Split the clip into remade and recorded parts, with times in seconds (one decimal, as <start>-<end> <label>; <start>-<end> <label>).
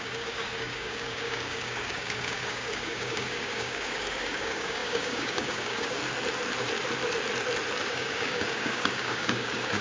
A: 0.0-6.0 remade; 6.0-7.9 recorded; 7.9-9.8 remade